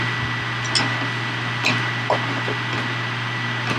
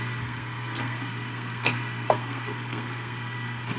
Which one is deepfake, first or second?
second